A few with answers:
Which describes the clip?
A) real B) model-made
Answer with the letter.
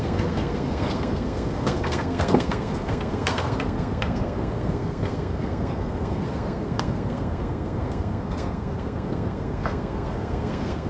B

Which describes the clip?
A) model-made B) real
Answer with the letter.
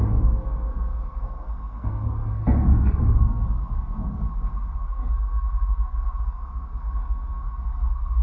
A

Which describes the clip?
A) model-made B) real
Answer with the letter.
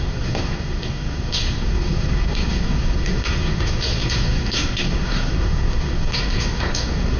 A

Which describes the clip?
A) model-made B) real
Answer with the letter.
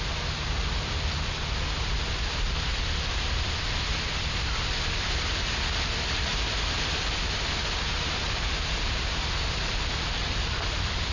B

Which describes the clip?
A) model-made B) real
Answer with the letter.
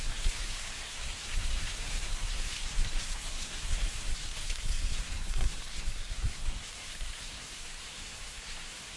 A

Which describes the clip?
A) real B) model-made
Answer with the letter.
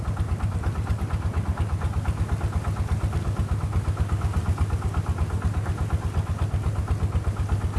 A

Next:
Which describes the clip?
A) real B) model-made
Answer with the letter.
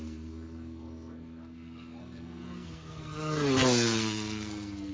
B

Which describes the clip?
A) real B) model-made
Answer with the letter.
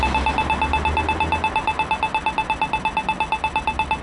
A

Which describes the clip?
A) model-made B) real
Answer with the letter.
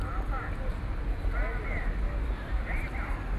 B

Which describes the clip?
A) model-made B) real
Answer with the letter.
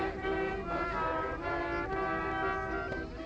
B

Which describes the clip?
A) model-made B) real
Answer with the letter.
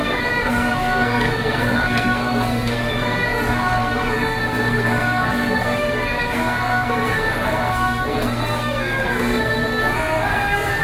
A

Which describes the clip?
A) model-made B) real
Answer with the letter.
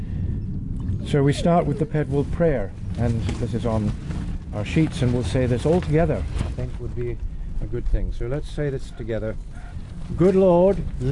B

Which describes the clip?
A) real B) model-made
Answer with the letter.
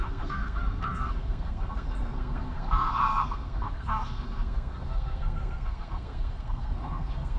B